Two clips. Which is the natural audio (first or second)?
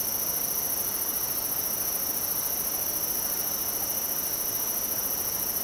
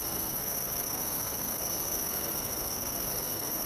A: first